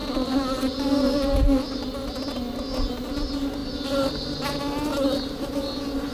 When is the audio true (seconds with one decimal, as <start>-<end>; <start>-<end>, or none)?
0.0-6.1